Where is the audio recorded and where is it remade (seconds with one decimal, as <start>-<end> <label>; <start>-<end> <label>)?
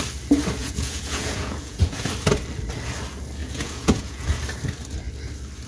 0.0-0.6 recorded; 0.6-2.1 remade; 2.1-3.4 recorded; 3.4-4.4 remade; 4.4-5.7 recorded